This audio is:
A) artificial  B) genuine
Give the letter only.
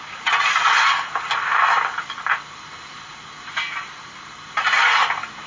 B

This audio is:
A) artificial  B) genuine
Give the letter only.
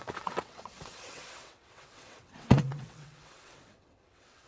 A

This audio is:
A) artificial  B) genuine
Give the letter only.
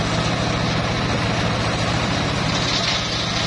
B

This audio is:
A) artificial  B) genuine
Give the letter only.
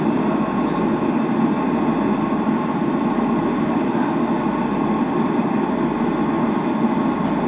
B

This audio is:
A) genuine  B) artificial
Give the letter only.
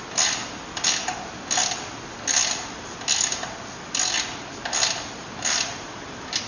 A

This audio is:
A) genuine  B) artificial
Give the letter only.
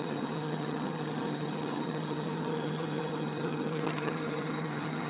B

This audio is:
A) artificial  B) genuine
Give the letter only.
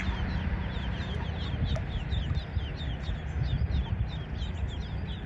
B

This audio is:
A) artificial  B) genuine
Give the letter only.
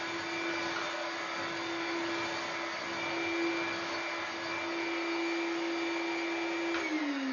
B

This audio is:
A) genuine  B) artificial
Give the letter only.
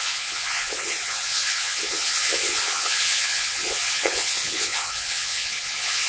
B